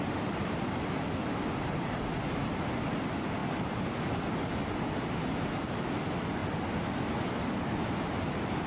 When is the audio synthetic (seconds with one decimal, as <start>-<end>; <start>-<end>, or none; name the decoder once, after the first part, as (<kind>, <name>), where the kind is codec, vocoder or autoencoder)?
none